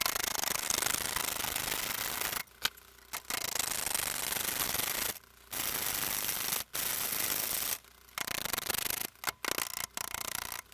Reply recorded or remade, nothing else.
recorded